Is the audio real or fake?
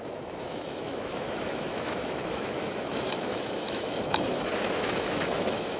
fake